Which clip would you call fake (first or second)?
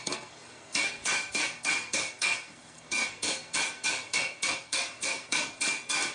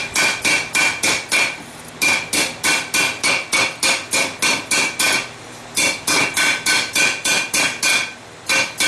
first